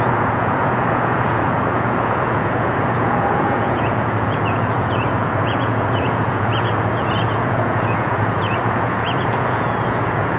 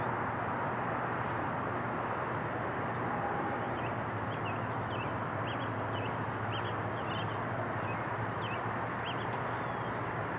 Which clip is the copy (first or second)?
first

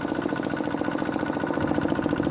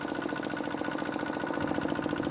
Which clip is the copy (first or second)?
first